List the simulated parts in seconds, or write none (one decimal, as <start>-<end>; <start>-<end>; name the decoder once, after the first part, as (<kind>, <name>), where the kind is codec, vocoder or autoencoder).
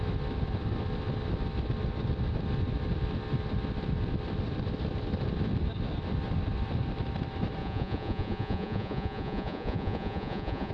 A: 7.6-10.7 (vocoder, Vocos)